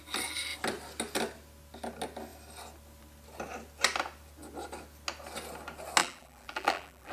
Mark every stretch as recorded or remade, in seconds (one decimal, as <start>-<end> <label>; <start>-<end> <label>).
0.0-6.0 recorded; 6.0-7.1 remade

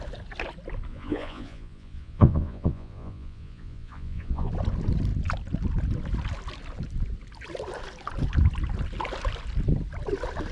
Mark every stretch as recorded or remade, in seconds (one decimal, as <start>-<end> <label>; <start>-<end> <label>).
0.0-0.9 recorded; 0.9-4.5 remade; 4.5-10.5 recorded

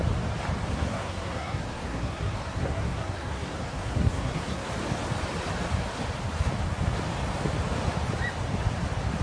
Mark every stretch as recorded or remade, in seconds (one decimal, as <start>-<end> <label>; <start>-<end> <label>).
0.0-0.7 recorded; 0.7-4.7 remade; 4.7-9.2 recorded

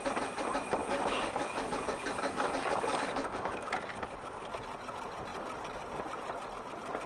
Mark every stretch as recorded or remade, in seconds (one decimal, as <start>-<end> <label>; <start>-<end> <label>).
0.0-0.8 recorded; 0.8-3.7 remade; 3.7-7.1 recorded